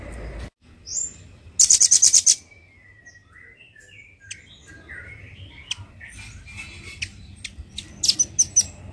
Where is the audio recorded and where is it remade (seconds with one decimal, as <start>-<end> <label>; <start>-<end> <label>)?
0.0-8.9 recorded

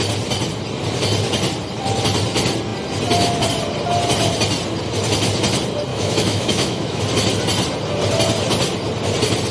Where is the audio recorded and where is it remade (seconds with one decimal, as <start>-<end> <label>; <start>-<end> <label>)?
0.0-5.9 recorded; 5.9-7.0 remade; 7.0-9.5 recorded

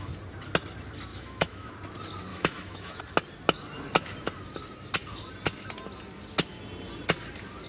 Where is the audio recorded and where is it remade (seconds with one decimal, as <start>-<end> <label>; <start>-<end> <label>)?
0.0-1.1 recorded; 1.1-1.7 remade; 1.7-2.3 recorded; 2.3-3.0 remade; 3.0-7.7 recorded

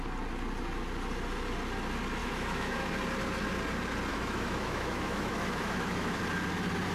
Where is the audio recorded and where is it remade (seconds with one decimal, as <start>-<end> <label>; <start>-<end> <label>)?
0.0-2.2 recorded; 2.2-2.9 remade; 2.9-4.1 recorded; 4.1-6.2 remade; 6.2-6.9 recorded